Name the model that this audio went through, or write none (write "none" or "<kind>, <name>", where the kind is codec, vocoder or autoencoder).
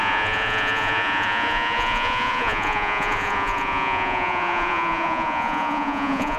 vocoder, Vocos